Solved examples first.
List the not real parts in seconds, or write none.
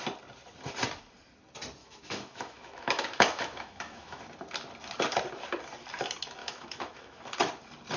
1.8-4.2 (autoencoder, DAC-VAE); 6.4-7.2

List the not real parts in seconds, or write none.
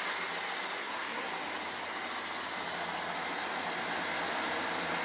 0.8-1.3 (codec, SNAC)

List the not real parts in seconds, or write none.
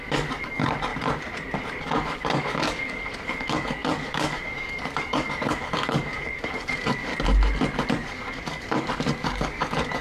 0.0-0.9 (codec, DAC); 1.8-7.1; 7.9-10.0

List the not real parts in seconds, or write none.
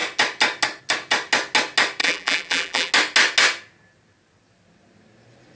2.0-2.9 (vocoder, BigVGAN v2)